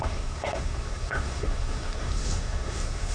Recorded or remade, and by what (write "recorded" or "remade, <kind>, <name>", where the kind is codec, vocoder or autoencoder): remade, codec, SNAC